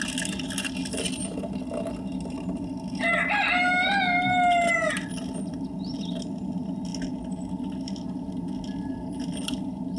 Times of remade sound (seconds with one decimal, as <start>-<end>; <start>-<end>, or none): none